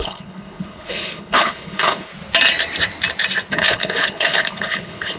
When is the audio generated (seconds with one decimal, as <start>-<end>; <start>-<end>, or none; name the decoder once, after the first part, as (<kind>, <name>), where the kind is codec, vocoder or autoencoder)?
0.0-2.1 (codec, HILCodec); 3.5-5.2